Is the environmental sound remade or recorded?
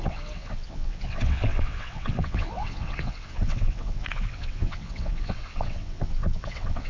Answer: remade